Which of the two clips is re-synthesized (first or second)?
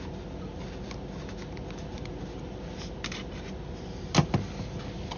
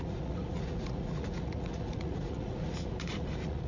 second